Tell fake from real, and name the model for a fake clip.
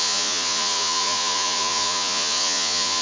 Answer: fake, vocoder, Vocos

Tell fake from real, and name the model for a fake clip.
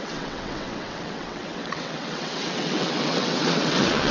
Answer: fake, vocoder, WaveNeXt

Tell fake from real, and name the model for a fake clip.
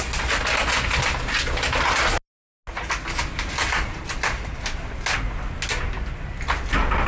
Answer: real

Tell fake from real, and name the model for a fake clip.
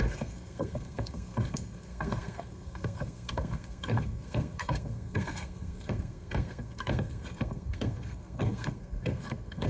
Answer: fake, codec, SNAC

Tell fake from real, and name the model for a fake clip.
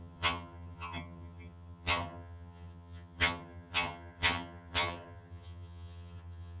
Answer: fake, vocoder, HiFi-GAN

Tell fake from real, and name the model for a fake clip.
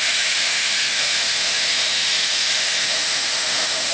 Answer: fake, autoencoder, DAC-VAE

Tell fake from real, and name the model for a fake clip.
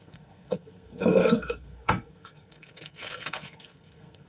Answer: fake, codec, SNAC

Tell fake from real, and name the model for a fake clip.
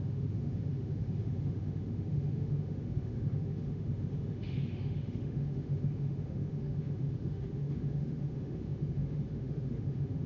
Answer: fake, autoencoder, DAC-VAE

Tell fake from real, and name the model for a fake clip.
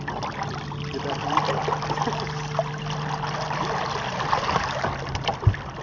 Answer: real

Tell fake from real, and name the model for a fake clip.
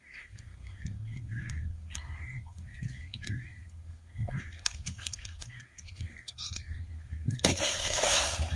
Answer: fake, codec, SNAC